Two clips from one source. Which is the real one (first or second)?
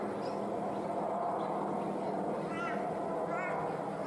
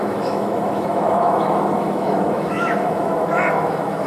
first